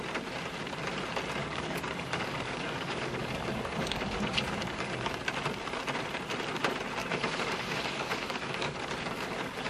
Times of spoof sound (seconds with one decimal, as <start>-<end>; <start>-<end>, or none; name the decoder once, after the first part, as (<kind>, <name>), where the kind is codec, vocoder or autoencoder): 1.4-5.1 (codec, DAC); 7.0-9.7

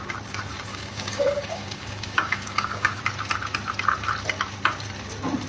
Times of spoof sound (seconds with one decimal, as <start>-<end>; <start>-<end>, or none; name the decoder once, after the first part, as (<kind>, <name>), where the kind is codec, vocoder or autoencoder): 0.7-3.0 (codec, DAC)

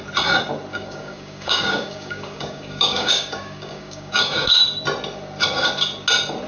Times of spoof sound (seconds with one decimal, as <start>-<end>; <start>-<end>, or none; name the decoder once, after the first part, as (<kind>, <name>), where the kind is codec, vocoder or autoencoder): 0.7-4.6 (codec, DAC)

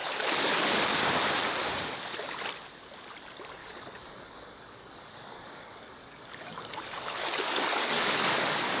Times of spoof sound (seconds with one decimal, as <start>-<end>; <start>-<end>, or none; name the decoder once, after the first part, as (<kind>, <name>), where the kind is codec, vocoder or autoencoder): 0.0-1.0 (codec, DAC); 3.6-8.8

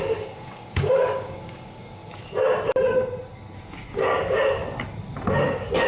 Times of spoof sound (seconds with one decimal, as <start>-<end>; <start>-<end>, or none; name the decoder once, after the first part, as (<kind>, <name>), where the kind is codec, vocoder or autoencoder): 0.0-2.0 (codec, DAC); 3.9-4.6; 5.3-5.9

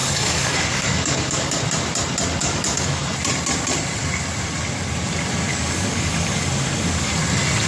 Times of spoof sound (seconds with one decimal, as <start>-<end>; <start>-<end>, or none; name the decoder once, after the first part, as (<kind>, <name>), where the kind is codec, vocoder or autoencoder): 0.0-1.6 (codec, DAC); 2.4-3.0; 5.5-7.1

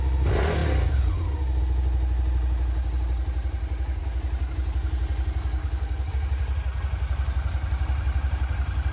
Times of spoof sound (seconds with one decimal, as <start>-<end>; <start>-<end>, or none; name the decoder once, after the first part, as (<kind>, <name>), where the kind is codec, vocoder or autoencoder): 5.6-6.1 (codec, DAC)